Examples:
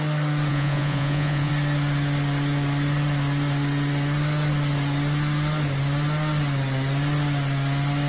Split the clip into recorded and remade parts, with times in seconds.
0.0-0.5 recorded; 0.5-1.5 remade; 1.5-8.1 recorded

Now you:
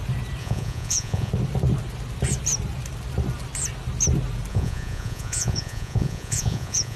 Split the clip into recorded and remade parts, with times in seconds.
0.0-0.4 recorded; 0.4-1.3 remade; 1.3-4.5 recorded; 4.5-7.0 remade

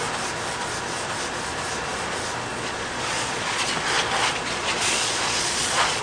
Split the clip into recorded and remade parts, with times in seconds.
0.0-2.5 recorded; 2.5-3.7 remade; 3.7-4.3 recorded; 4.3-6.0 remade

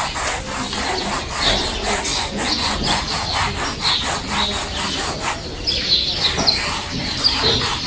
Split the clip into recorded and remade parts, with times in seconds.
0.0-2.1 recorded; 2.1-3.0 remade; 3.0-7.9 recorded

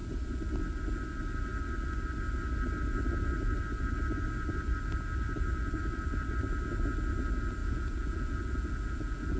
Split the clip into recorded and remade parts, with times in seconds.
0.0-7.6 recorded; 7.6-9.4 remade

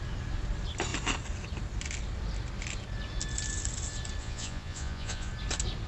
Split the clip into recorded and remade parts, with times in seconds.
0.0-4.2 recorded; 4.2-5.3 remade; 5.3-5.9 recorded